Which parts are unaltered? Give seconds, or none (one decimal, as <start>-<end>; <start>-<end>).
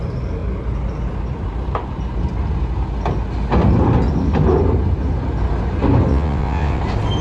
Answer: 0.0-6.1; 6.8-7.2